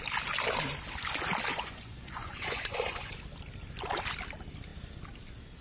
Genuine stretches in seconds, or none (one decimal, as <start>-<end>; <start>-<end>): 0.0-1.5; 3.2-5.6